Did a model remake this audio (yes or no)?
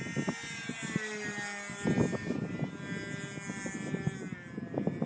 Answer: no